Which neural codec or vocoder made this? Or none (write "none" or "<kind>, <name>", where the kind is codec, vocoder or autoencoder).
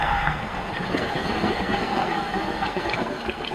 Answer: codec, SNAC